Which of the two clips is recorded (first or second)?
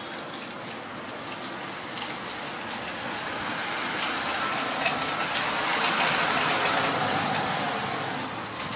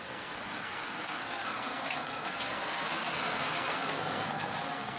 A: first